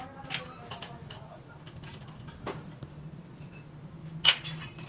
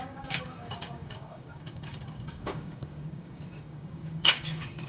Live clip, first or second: first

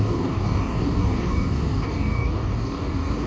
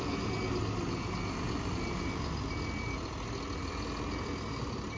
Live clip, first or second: second